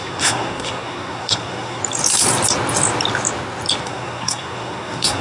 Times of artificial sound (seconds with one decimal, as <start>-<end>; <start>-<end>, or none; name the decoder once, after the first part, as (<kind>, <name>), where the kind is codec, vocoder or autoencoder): 0.0-1.8 (codec, SNAC); 3.8-5.2